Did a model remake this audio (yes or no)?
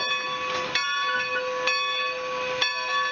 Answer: no